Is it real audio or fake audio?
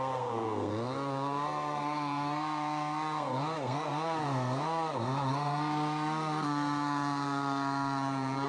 fake